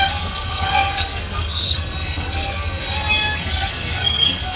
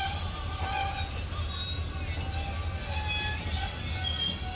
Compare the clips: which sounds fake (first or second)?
first